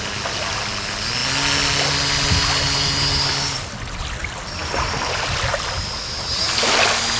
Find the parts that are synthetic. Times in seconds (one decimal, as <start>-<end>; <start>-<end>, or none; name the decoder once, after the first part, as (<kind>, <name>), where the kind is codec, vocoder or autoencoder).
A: none